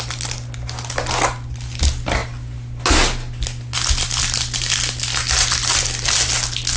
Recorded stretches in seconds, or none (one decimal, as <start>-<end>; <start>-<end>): 0.0-6.8